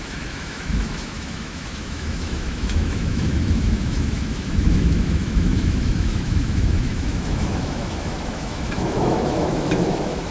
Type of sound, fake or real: fake